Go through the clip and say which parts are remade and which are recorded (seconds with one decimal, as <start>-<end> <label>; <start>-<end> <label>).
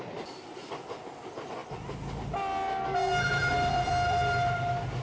0.0-5.0 recorded